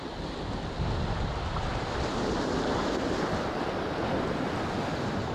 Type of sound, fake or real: real